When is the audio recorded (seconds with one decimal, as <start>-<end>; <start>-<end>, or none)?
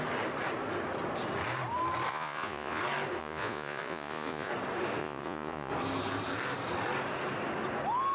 0.0-2.1; 2.8-3.2; 4.5-5.0; 5.7-8.1